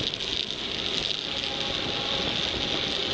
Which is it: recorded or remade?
recorded